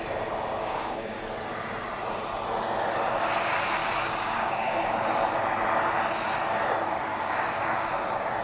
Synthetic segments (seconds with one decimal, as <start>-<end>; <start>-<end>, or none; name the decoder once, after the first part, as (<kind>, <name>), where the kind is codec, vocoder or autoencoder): 0.6-1.2 (codec, DAC); 3.8-4.9; 7.1-7.9